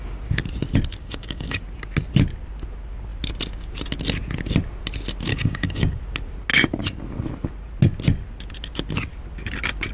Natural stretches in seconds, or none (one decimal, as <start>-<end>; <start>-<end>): 0.0-1.0; 1.6-5.3; 6.0-9.9